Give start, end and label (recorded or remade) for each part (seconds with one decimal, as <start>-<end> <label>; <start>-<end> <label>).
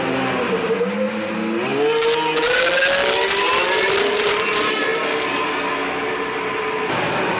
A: 0.0-7.4 recorded